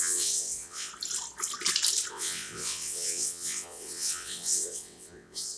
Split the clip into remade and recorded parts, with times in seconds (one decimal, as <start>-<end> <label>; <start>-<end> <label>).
0.0-0.9 remade; 0.9-2.1 recorded; 2.1-5.6 remade